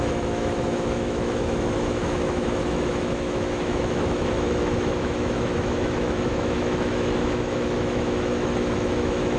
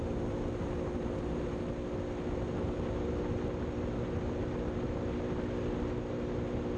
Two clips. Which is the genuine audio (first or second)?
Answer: second